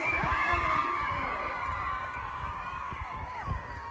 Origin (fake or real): fake